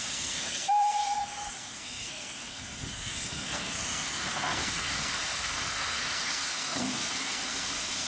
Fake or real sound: fake